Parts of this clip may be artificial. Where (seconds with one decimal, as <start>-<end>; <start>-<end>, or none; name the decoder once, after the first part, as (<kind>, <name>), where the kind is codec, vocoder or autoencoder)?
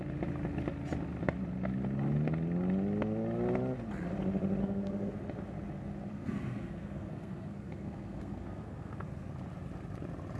4.6-5.1 (codec, SNAC); 6.1-9.3